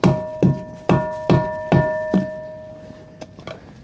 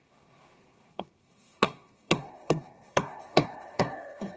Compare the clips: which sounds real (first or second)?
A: first